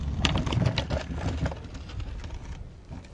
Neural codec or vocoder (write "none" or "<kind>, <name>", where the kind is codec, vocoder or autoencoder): vocoder, BigVGAN v2